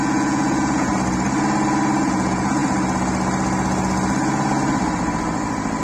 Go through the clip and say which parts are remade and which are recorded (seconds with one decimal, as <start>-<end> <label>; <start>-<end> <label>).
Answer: 0.0-0.9 remade; 0.9-2.0 recorded; 2.0-2.6 remade; 2.6-5.8 recorded